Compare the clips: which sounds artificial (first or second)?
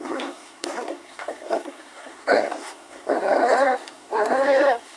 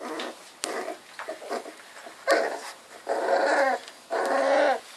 first